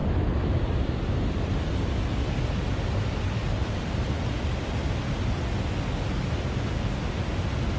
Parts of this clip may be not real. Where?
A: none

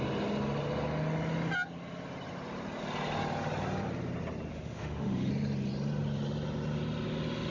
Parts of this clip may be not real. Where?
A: 4.5-5.3

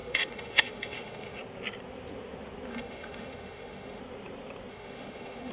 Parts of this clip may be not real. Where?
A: 0.0-1.4; 2.7-4.0; 4.7-5.5

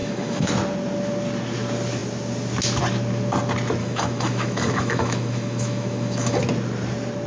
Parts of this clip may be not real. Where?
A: 0.0-0.5; 3.8-6.4

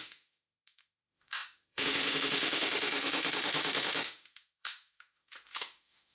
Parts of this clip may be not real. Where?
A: 0.0-6.1